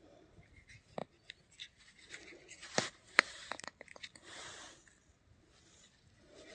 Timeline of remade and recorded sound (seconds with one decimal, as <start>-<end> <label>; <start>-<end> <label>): 0.0-2.6 recorded; 2.6-4.1 remade; 4.1-6.5 recorded